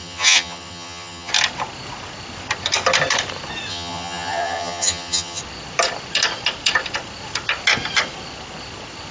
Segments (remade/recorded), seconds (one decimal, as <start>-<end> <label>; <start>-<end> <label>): 0.0-1.3 remade; 1.3-3.7 recorded; 3.7-5.4 remade; 5.4-9.1 recorded

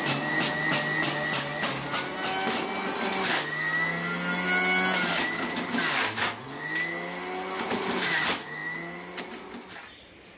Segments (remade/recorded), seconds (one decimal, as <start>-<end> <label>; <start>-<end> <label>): 0.0-10.4 recorded